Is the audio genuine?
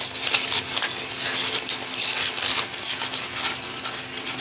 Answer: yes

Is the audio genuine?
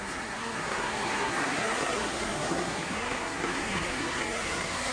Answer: no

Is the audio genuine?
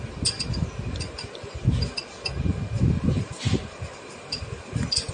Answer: yes